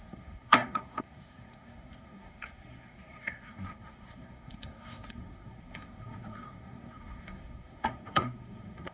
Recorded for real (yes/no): no